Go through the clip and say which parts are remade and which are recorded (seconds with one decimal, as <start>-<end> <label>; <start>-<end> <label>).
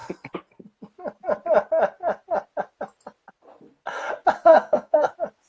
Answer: 0.0-4.5 recorded; 4.5-5.1 remade; 5.1-5.5 recorded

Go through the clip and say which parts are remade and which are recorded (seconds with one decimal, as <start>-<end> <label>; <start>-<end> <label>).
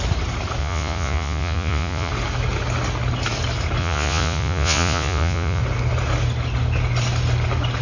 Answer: 0.0-0.6 recorded; 0.6-2.1 remade; 2.1-3.8 recorded; 3.8-5.6 remade; 5.6-7.8 recorded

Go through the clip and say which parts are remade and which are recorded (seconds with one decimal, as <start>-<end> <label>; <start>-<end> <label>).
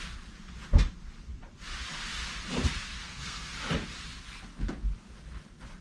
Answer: 0.0-3.0 recorded; 3.0-3.5 remade; 3.5-5.8 recorded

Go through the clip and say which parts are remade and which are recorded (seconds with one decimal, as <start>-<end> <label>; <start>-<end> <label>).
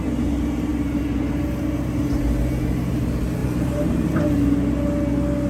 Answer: 0.0-3.4 recorded; 3.4-4.3 remade; 4.3-5.5 recorded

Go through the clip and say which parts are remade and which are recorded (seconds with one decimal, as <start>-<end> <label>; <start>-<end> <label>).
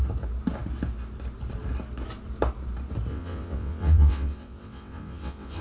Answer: 0.0-3.1 recorded; 3.1-5.6 remade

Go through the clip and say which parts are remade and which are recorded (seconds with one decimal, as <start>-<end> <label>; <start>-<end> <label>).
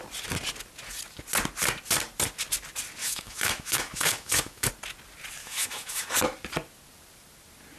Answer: 0.0-3.0 recorded; 3.0-4.7 remade; 4.7-5.4 recorded; 5.4-6.1 remade; 6.1-7.8 recorded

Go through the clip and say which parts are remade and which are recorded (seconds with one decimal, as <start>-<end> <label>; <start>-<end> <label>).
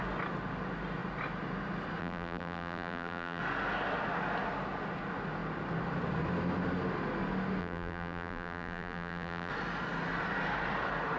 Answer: 0.0-2.0 recorded; 2.0-3.4 remade; 3.4-7.6 recorded; 7.6-9.5 remade; 9.5-11.2 recorded